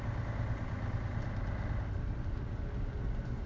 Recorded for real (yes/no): yes